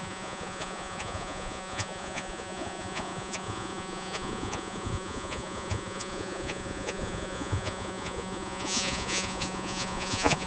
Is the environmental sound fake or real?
fake